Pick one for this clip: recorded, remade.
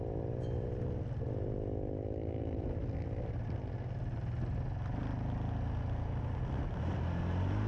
recorded